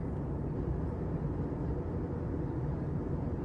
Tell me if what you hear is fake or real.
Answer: real